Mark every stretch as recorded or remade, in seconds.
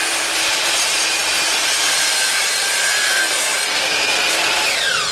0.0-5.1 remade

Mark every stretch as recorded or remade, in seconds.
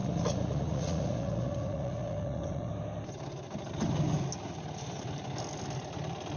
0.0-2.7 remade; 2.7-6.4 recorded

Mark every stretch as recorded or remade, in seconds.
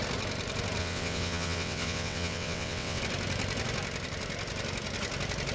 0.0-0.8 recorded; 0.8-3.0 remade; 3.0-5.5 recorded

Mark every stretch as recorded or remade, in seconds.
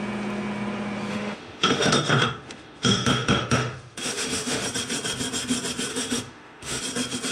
0.0-1.1 recorded; 1.1-4.6 remade; 4.6-5.9 recorded; 5.9-6.8 remade; 6.8-7.3 recorded